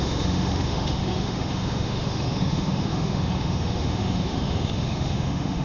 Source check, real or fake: fake